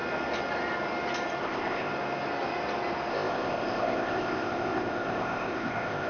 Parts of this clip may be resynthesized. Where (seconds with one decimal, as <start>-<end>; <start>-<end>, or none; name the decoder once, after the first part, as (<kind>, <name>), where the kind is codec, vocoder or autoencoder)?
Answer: 1.4-1.9 (codec, ZipCodec); 3.1-6.1